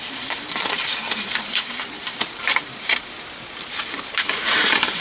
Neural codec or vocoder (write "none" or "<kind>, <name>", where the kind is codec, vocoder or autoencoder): vocoder, BigVGAN v2